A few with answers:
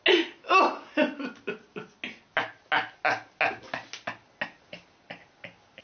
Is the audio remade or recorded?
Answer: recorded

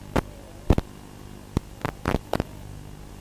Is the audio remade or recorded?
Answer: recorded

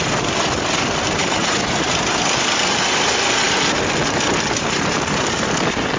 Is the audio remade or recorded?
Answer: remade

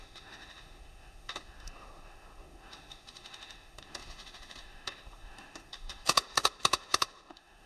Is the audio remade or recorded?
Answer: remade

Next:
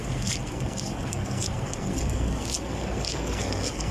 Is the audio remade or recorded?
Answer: remade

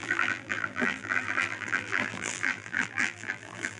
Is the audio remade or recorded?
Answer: remade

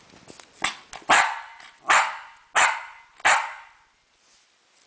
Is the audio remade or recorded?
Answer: recorded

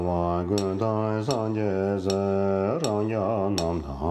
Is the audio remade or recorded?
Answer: recorded